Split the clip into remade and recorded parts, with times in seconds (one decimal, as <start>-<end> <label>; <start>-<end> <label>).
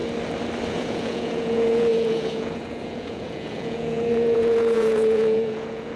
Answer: 0.0-0.7 recorded; 0.7-6.0 remade